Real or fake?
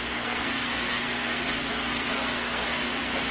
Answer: fake